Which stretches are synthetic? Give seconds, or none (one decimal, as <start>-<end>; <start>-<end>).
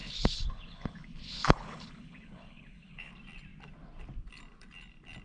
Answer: 0.0-3.1